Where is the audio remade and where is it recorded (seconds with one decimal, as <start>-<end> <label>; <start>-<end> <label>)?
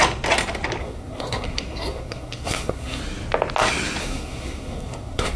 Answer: 0.0-0.8 recorded; 0.8-3.0 remade; 3.0-4.0 recorded; 4.0-5.4 remade